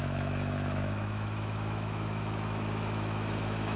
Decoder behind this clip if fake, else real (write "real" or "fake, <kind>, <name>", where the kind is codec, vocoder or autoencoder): fake, autoencoder, DAC-VAE